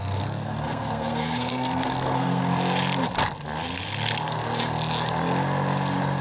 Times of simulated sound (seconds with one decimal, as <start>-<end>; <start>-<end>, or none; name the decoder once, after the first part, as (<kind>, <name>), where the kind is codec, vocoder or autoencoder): 0.0-2.4 (codec, SNAC)